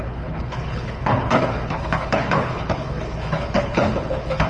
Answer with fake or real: fake